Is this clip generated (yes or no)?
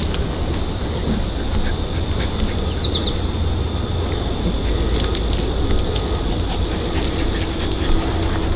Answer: no